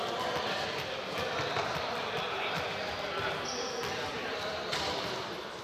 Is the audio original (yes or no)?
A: no